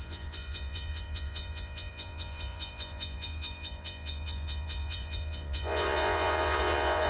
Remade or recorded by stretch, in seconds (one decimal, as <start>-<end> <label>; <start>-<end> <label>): 0.0-7.1 remade